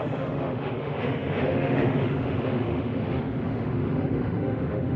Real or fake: fake